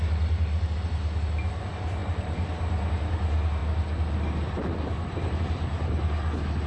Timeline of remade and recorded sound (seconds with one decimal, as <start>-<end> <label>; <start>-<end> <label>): 0.0-6.7 recorded